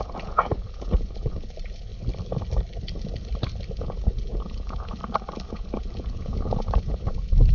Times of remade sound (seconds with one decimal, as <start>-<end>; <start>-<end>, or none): 0.0-1.9; 3.7-5.0; 5.5-7.5